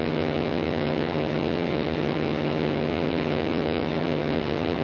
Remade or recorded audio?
remade